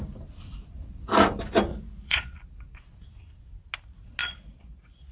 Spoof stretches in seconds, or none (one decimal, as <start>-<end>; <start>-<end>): 1.7-2.4; 4.2-5.1